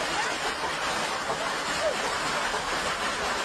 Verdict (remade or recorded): recorded